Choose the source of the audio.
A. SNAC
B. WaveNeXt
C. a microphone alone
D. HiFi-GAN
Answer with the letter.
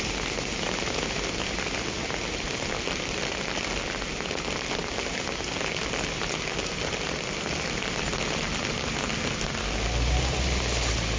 C